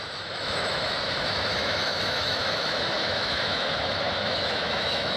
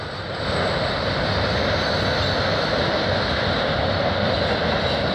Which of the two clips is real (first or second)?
second